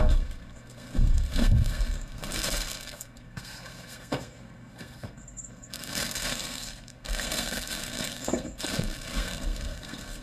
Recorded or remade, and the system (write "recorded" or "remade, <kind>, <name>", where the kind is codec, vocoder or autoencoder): remade, codec, SNAC